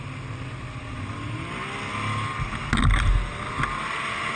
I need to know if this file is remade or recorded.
recorded